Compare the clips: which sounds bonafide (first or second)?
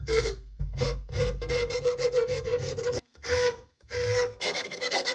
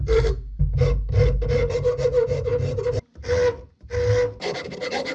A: second